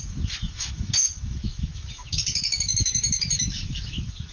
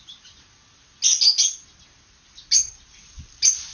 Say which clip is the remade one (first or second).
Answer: first